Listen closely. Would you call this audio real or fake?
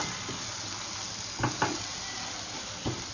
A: real